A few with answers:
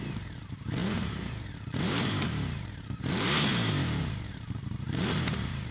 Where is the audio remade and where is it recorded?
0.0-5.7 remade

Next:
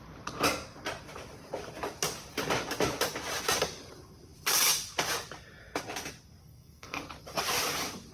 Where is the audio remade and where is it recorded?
0.0-6.4 recorded; 6.4-7.0 remade; 7.0-8.1 recorded

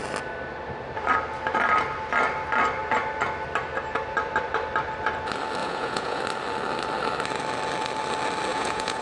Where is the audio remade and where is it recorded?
0.0-5.6 recorded; 5.6-6.2 remade; 6.2-8.5 recorded; 8.5-9.0 remade

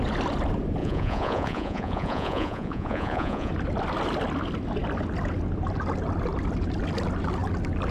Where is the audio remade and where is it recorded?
0.0-0.8 recorded; 0.8-3.5 remade; 3.5-7.9 recorded

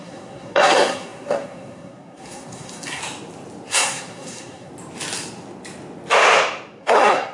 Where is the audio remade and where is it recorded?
0.0-3.0 remade; 3.0-3.7 recorded; 3.7-4.7 remade; 4.7-6.8 recorded; 6.8-7.3 remade

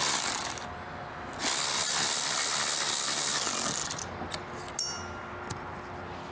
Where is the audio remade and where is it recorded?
0.0-6.3 recorded